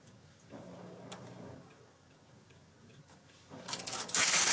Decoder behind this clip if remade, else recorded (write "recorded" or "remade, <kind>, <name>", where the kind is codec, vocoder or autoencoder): remade, codec, DAC